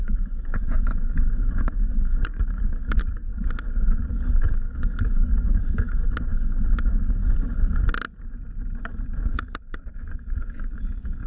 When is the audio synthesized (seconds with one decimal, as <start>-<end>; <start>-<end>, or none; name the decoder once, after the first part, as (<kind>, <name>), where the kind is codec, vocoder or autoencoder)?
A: 0.0-3.3 (codec, DAC); 4.1-6.0; 9.3-11.3